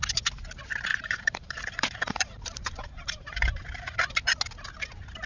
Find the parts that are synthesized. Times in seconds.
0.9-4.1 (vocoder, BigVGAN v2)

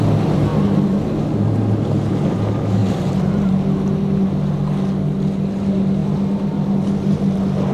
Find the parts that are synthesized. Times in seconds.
2.8-3.6 (vocoder, BigVGAN v2)

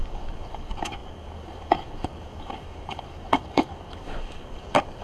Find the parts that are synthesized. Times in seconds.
0.0-5.0 (codec, DAC)